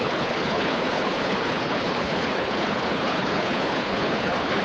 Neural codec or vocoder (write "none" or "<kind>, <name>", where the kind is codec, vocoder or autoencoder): codec, HILCodec